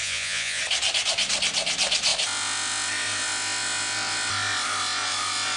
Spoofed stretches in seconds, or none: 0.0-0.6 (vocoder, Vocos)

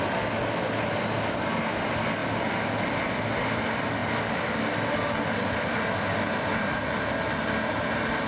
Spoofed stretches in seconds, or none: none

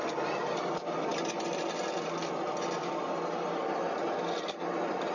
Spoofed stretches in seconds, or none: none

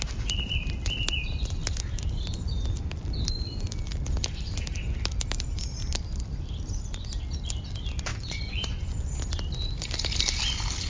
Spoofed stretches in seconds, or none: 8.1-9.1 (vocoder, Vocos)

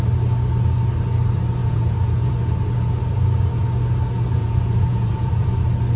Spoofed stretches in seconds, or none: 1.6-2.3 (vocoder, Vocos); 4.4-5.5

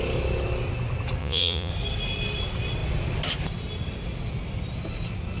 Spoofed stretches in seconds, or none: 1.2-1.7 (vocoder, Vocos)

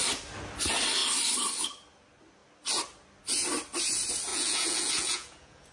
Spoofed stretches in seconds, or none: 4.3-5.7 (vocoder, Vocos)